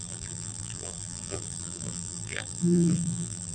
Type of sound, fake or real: fake